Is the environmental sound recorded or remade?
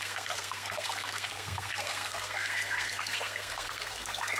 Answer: remade